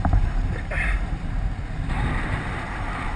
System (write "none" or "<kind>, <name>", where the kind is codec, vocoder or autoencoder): vocoder, BigVGAN v2